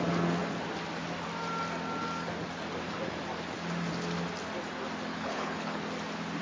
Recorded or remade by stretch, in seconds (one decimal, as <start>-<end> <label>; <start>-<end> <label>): 0.0-5.1 recorded; 5.1-5.8 remade; 5.8-6.4 recorded